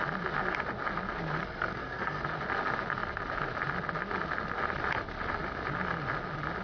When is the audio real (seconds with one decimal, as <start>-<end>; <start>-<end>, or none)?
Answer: 0.0-1.4; 2.2-6.6